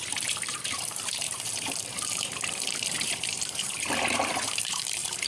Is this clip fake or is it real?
fake